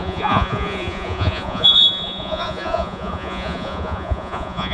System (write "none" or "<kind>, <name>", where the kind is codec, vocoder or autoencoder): vocoder, Vocos